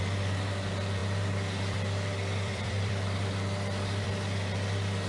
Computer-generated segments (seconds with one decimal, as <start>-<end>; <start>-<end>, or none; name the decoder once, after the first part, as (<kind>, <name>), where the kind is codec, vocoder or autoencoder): 1.0-4.1 (vocoder, BigVGAN v2)